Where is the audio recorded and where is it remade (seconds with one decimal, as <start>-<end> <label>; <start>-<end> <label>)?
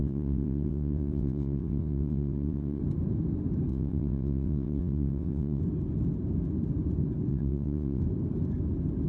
0.0-2.8 remade; 2.8-3.7 recorded; 3.7-5.6 remade; 5.6-7.3 recorded; 7.3-8.0 remade; 8.0-9.1 recorded